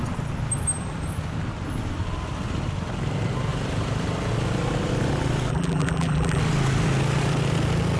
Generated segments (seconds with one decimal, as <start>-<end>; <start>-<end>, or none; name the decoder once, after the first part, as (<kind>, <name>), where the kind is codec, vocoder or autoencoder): 5.5-6.4 (vocoder, BigVGAN v2)